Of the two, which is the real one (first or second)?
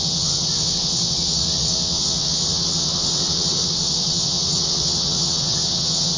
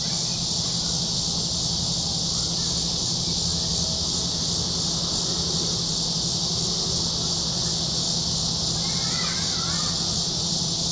second